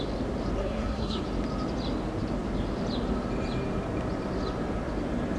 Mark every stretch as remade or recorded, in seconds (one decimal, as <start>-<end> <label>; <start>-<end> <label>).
0.0-0.6 recorded; 0.6-1.2 remade; 1.2-5.4 recorded